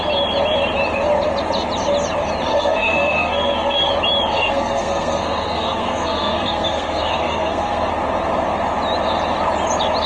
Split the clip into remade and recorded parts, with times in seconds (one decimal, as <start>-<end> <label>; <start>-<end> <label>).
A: 0.0-2.5 recorded; 2.5-3.9 remade; 3.9-4.3 recorded; 4.3-7.9 remade; 7.9-10.1 recorded